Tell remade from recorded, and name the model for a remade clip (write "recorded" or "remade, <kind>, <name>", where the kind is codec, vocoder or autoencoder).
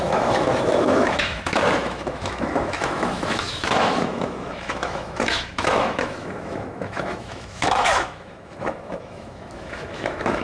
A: remade, autoencoder, DAC-VAE